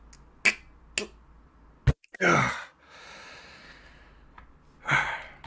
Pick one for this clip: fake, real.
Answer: real